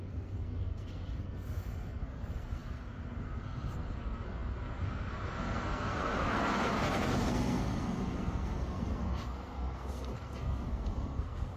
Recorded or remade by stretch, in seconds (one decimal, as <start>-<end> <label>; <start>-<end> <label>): 0.0-11.6 remade